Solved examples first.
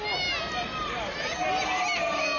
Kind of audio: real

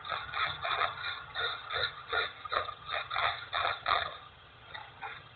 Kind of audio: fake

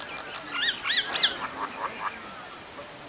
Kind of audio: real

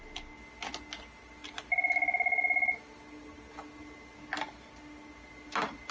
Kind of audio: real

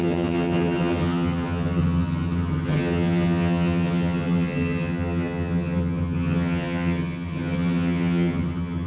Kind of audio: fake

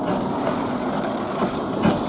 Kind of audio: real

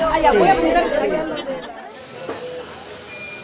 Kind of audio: real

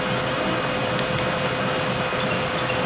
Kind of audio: real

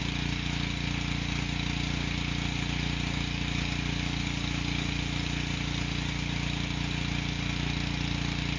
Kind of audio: real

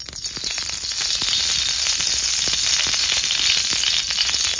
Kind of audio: real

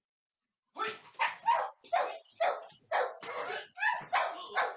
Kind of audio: real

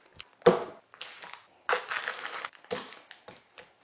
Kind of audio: real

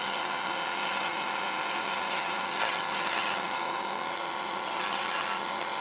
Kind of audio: fake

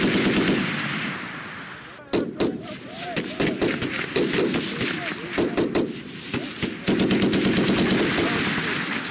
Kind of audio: real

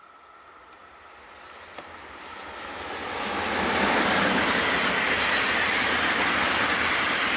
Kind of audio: real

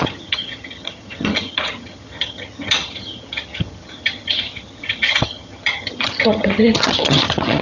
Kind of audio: fake